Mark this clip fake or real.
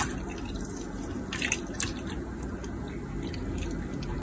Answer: real